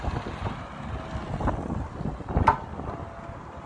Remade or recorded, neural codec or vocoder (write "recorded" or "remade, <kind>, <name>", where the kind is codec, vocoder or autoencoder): recorded